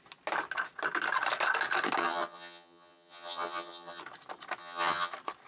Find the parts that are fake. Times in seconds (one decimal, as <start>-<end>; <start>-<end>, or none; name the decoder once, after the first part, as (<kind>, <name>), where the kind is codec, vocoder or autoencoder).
2.0-4.0 (vocoder, HiFi-GAN); 4.6-5.1